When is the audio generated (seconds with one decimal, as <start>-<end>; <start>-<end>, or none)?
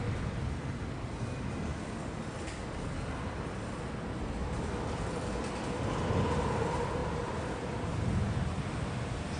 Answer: none